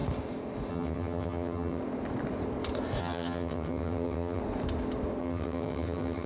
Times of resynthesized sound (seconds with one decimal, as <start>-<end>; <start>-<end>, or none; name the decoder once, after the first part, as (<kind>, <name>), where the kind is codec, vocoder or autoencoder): 0.7-1.8 (vocoder, HiFi-GAN); 3.0-4.4; 5.2-6.3